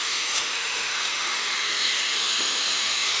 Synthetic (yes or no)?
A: yes